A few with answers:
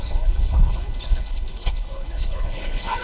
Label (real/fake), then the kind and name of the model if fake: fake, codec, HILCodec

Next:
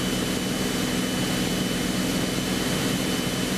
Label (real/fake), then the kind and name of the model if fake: real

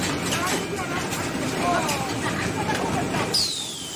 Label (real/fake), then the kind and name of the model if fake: real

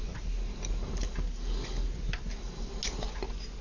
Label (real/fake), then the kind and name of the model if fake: real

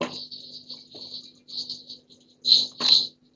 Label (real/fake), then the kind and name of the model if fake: real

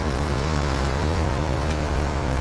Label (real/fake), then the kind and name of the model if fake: fake, vocoder, Vocos